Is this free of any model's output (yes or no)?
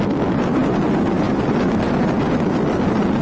yes